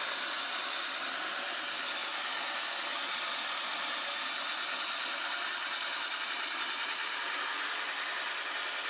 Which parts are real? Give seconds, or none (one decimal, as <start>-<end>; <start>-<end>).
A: 0.0-8.9